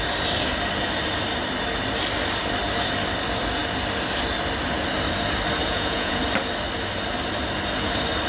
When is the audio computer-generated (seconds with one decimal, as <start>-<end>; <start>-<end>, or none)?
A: 5.6-6.2

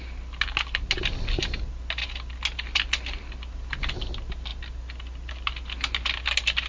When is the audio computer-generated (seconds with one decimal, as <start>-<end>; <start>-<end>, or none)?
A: none

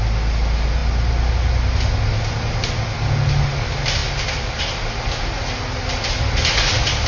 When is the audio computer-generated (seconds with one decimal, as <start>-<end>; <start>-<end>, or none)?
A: none

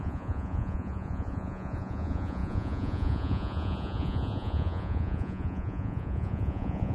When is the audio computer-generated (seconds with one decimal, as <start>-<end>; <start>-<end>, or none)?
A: 0.0-6.9

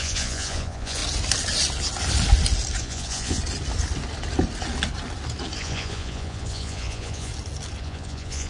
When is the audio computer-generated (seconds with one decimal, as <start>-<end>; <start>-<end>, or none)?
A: 0.0-1.0; 2.8-3.4; 5.6-7.3; 7.8-8.5

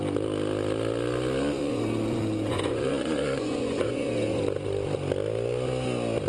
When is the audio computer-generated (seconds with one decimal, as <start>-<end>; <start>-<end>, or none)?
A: 1.6-4.4

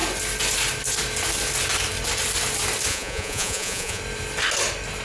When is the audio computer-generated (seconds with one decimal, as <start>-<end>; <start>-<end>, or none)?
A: 2.9-4.0